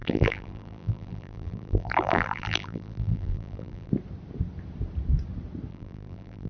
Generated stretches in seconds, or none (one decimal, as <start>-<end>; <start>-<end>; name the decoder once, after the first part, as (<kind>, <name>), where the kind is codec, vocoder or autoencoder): 0.0-3.9 (vocoder, BigVGAN v2); 5.7-6.5